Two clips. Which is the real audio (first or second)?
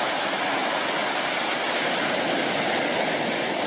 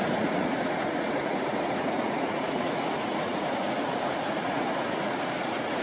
first